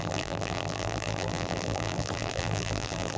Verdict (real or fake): fake